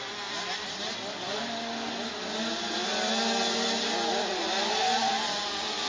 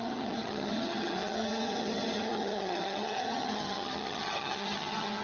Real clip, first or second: first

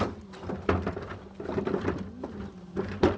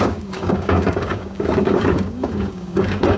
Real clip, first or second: first